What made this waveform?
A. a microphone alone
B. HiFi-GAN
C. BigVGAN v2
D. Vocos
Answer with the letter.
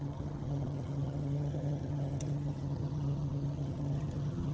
B